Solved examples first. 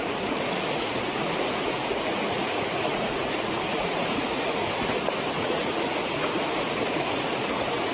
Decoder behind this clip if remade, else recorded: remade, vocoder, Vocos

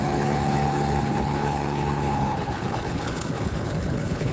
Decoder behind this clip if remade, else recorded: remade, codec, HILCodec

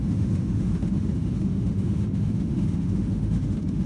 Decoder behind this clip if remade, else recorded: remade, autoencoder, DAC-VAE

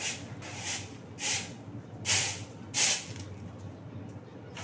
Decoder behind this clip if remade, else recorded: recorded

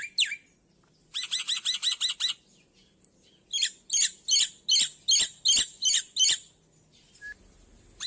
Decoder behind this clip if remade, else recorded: recorded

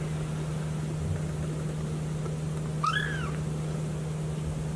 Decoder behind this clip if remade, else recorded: recorded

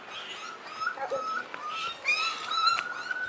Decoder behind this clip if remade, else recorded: recorded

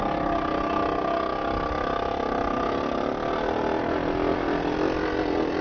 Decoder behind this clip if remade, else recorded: recorded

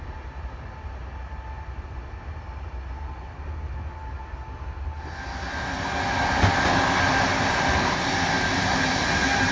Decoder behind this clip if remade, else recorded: recorded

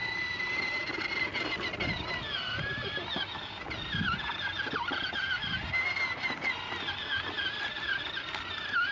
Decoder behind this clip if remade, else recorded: recorded